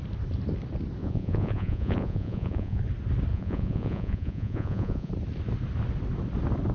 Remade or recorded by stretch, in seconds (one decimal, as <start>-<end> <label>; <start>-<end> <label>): 0.0-1.0 recorded; 1.0-2.8 remade; 2.8-3.3 recorded; 3.3-5.1 remade; 5.1-6.7 recorded